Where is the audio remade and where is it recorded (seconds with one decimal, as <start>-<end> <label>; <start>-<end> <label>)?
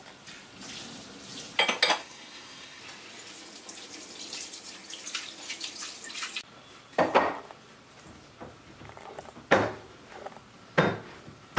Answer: 0.0-2.0 recorded; 2.0-2.8 remade; 2.8-11.6 recorded